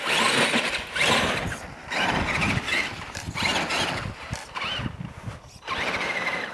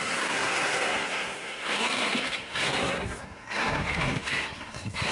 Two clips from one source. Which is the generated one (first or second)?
second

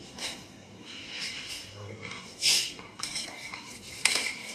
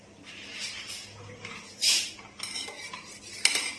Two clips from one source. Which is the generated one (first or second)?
first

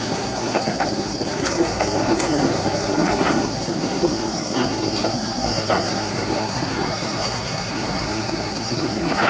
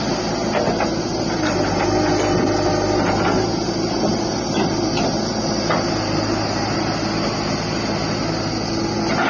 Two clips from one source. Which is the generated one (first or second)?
first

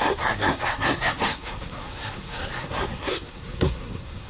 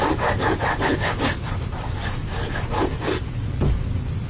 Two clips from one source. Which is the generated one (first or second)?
first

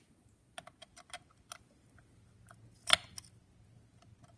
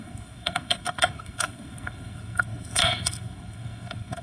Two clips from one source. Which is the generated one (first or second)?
second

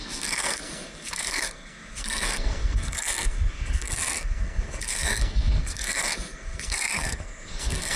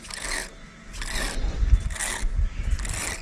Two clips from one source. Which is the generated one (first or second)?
first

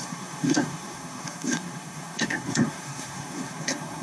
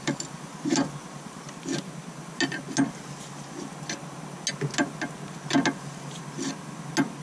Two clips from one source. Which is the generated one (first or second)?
first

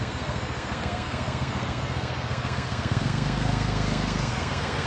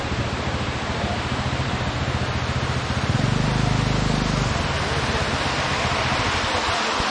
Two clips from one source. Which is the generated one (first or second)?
first